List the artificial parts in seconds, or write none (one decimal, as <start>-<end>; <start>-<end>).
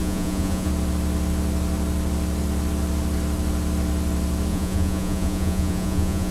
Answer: 0.0-0.7; 4.5-6.3